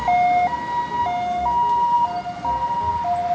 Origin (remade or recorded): recorded